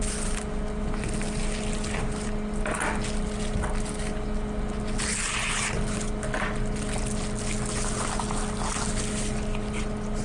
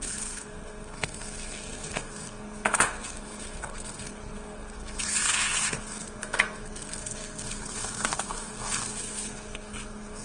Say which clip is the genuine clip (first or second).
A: first